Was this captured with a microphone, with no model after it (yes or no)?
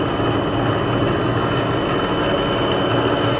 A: yes